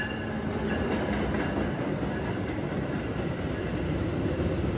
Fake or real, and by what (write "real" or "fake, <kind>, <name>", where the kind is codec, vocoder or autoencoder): real